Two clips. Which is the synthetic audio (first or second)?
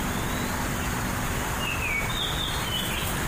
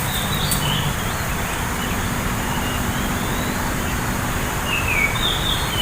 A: second